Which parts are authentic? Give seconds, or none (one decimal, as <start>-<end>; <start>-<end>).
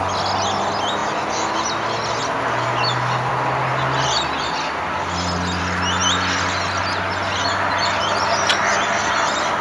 0.0-9.6